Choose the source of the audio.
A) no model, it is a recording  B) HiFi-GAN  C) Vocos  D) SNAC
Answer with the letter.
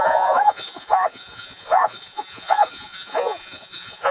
C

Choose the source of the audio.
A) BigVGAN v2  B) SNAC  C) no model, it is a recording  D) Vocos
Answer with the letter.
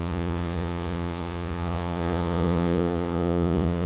D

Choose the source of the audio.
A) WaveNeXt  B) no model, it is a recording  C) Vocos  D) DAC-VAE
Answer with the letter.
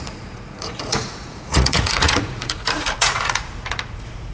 C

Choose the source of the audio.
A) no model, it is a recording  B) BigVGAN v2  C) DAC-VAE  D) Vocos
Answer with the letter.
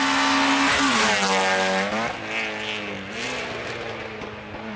A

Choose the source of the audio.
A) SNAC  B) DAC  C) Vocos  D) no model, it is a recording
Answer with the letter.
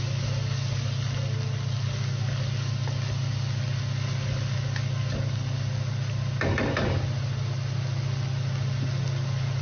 D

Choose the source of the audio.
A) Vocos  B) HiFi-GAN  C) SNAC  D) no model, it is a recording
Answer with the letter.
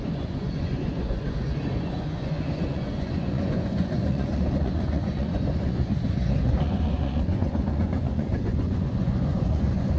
A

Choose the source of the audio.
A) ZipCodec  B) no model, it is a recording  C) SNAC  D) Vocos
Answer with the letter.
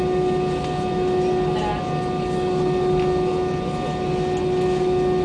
B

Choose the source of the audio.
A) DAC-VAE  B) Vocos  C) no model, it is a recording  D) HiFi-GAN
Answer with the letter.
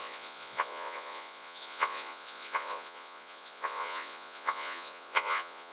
B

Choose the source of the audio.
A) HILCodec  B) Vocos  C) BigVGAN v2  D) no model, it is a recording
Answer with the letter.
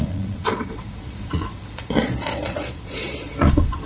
B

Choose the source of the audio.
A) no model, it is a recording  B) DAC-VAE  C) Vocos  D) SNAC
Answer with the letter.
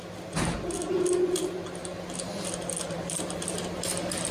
A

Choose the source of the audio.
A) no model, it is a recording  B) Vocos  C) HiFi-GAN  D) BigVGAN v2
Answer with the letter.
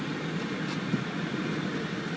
A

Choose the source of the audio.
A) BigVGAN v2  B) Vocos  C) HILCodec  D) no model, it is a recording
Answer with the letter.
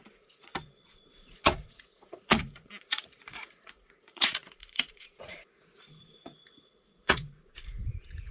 B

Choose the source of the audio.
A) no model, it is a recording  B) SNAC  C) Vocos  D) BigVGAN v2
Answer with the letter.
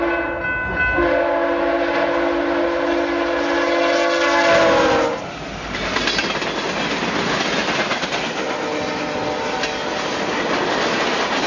A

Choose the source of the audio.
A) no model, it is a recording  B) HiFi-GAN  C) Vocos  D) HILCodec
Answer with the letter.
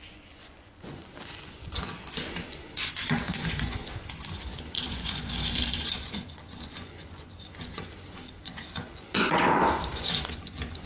C